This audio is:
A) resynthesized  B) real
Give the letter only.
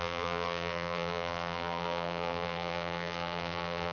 A